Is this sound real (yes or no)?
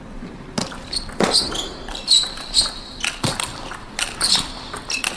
yes